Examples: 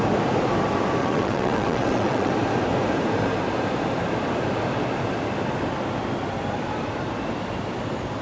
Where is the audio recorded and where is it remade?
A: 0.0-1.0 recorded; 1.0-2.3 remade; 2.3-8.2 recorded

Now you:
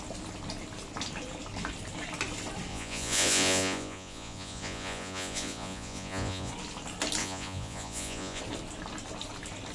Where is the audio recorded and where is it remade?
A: 0.0-2.7 recorded; 2.7-6.5 remade; 6.5-7.2 recorded; 7.2-8.4 remade; 8.4-9.7 recorded

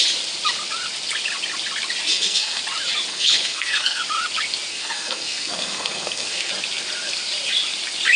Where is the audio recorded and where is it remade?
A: 0.0-2.1 recorded; 2.1-2.6 remade; 2.6-3.1 recorded; 3.1-4.0 remade; 4.0-4.7 recorded; 4.7-6.5 remade; 6.5-8.2 recorded

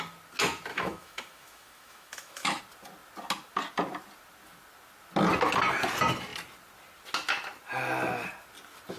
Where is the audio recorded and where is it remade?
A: 0.0-0.7 recorded; 0.7-2.6 remade; 2.6-9.0 recorded

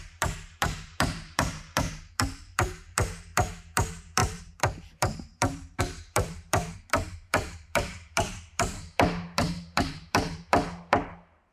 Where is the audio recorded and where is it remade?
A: 0.0-11.5 remade

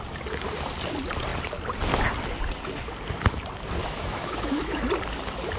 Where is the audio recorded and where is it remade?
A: 0.0-3.8 recorded; 3.8-4.9 remade; 4.9-5.6 recorded